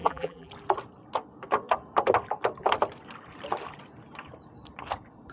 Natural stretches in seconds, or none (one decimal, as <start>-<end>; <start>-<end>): 0.5-5.3